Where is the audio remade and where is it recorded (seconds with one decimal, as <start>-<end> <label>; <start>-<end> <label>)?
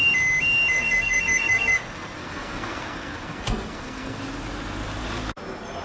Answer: 0.0-0.7 recorded; 0.7-1.8 remade; 1.8-2.2 recorded; 2.2-4.2 remade; 4.2-5.8 recorded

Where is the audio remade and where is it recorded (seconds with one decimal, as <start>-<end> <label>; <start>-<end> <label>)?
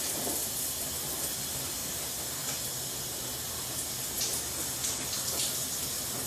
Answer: 0.0-6.3 recorded